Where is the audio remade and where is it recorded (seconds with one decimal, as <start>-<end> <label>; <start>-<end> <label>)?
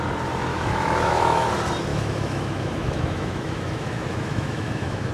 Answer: 0.0-0.5 recorded; 0.5-1.5 remade; 1.5-1.9 recorded; 1.9-5.1 remade